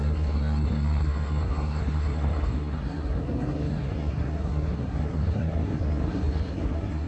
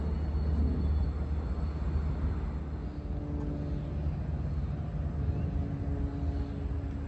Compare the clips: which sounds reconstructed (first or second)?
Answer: first